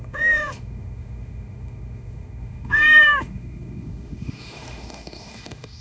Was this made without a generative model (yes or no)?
no